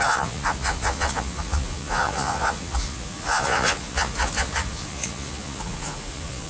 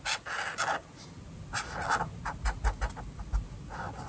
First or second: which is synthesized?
first